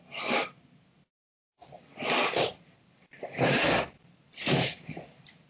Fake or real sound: fake